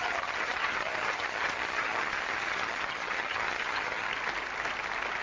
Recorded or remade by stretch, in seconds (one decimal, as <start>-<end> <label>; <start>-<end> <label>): 0.0-4.1 remade; 4.1-5.2 recorded